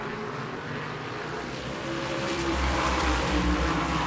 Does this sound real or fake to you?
fake